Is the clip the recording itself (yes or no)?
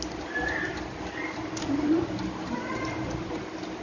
no